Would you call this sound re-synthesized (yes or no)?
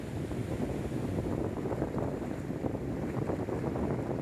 yes